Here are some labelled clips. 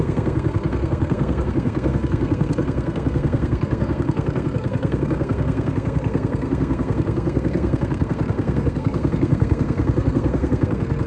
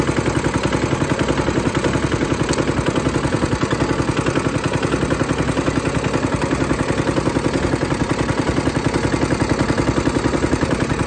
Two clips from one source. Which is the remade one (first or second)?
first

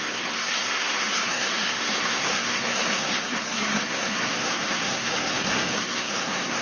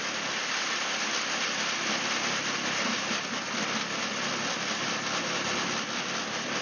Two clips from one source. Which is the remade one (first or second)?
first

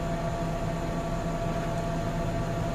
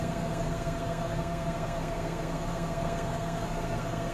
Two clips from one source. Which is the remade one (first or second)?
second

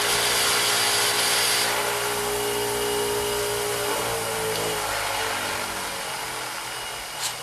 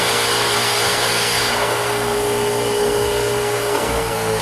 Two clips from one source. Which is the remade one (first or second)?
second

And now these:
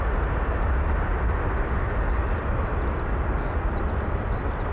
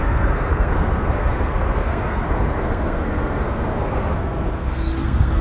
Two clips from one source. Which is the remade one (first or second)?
second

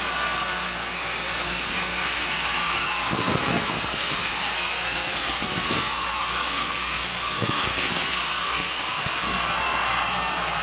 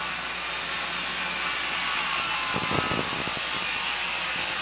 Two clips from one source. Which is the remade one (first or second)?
first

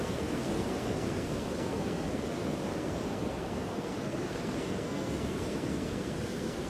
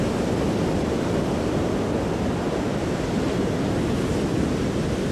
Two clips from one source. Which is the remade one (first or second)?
first